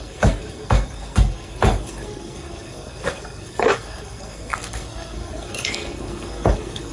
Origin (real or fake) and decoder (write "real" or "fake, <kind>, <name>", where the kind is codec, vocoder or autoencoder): fake, codec, SNAC